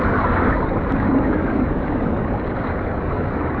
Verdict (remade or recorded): remade